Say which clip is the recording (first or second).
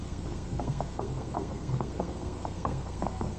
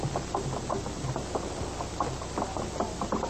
second